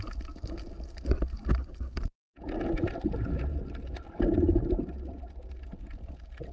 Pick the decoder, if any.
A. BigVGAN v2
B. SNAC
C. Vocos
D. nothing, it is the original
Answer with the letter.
D